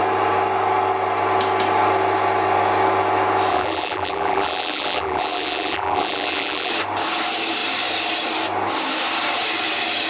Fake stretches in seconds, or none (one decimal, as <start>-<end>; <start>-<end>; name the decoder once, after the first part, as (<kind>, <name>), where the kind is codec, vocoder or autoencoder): 3.5-6.7 (vocoder, BigVGAN v2)